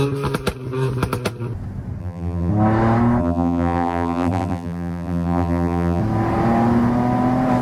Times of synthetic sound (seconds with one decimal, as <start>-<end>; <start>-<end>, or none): 2.0-2.5; 3.2-6.0